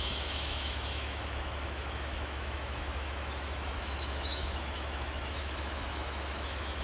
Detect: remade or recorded remade